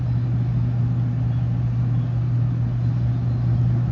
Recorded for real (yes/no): yes